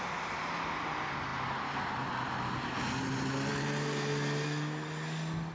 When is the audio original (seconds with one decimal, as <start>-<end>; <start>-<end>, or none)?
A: 0.0-5.5